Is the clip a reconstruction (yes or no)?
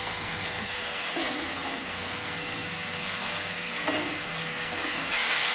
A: yes